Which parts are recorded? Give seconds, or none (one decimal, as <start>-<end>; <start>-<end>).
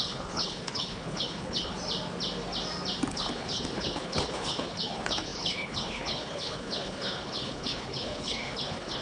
1.7-3.1